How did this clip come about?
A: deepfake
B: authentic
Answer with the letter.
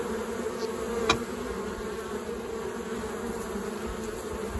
B